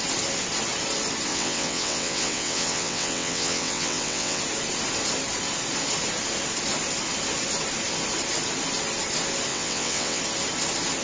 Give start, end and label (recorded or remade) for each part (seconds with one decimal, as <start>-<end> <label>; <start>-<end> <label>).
0.0-1.3 recorded; 1.3-4.4 remade; 4.4-9.5 recorded; 9.5-10.2 remade; 10.2-11.0 recorded